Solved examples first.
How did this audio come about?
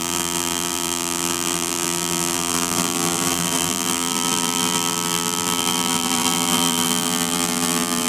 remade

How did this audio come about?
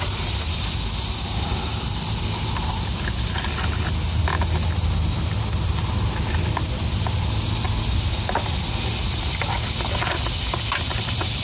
recorded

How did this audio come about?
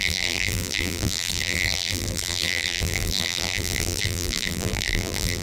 remade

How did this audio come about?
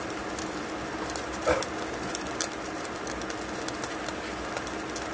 recorded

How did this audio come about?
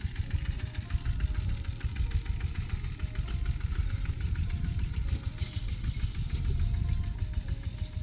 recorded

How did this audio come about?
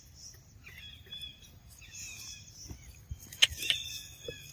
recorded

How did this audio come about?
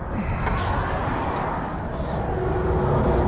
recorded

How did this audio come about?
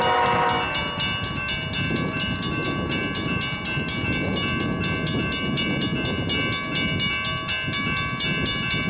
recorded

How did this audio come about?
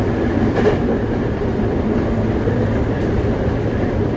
remade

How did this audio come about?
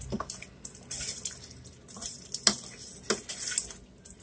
recorded